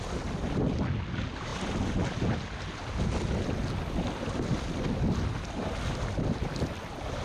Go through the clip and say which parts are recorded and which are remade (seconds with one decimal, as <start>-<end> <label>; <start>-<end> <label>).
0.0-7.2 recorded